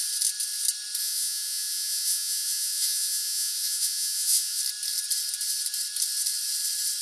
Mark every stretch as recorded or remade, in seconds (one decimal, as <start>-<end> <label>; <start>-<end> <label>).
0.0-1.0 recorded; 1.0-4.6 remade; 4.6-7.0 recorded